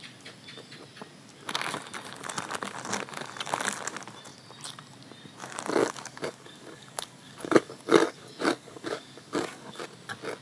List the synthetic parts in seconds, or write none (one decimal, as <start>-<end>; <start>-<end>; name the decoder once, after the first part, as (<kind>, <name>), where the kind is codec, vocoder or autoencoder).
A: 5.8-9.8 (codec, DAC)

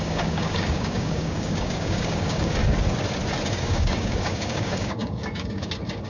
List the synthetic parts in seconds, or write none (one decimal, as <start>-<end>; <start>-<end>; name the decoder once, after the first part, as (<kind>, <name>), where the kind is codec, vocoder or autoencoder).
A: 0.0-2.6 (codec, DAC); 3.5-6.1

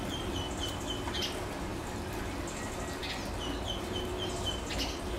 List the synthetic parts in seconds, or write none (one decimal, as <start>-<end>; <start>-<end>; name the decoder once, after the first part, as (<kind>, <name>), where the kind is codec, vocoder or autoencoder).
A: none

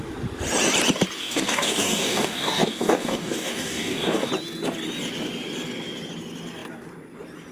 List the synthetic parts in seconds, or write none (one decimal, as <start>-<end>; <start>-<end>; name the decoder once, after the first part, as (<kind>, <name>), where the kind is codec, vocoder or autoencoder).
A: 1.2-4.3 (codec, DAC)

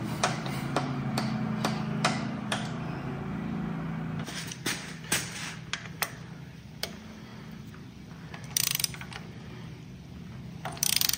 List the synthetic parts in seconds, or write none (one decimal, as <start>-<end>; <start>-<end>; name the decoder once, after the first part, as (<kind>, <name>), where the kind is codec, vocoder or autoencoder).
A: none

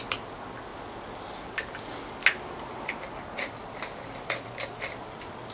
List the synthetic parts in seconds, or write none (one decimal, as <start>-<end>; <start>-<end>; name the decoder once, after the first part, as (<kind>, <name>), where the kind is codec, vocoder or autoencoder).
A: none

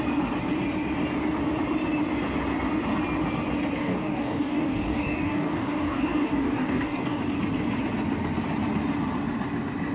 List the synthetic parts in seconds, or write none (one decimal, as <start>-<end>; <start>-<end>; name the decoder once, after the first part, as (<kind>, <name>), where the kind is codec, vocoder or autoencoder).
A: 3.8-7.2 (codec, DAC)

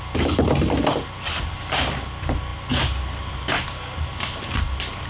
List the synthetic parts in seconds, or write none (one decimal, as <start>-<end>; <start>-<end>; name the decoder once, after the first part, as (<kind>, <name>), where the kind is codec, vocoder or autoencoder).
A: none